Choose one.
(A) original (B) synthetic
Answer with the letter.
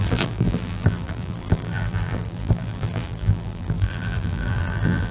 B